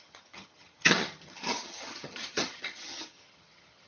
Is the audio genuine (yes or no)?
no